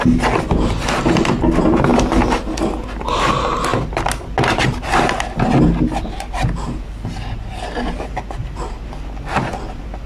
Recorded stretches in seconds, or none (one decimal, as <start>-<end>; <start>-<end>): 0.0-1.9; 3.1-10.1